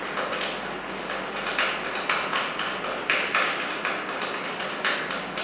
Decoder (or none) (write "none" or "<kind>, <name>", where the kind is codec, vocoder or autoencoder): none